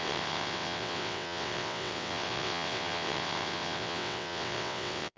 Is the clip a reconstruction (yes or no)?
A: yes